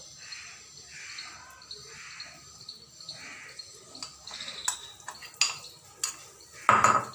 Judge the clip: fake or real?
real